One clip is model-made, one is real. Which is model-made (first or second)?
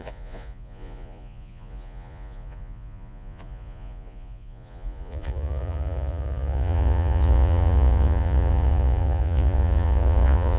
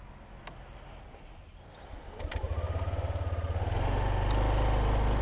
first